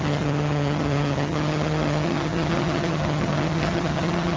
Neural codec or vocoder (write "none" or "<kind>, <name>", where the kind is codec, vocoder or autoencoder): vocoder, HiFi-GAN